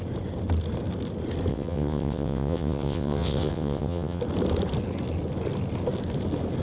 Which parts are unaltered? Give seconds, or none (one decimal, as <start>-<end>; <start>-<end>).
0.0-1.5; 4.2-6.6